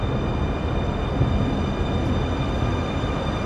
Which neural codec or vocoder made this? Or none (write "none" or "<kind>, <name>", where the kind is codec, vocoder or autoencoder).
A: none